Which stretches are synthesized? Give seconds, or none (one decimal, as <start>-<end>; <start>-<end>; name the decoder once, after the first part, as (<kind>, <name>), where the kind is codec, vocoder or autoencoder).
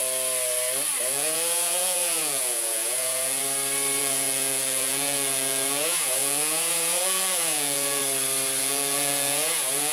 1.0-3.4 (vocoder, Vocos); 4.0-8.0; 8.6-9.9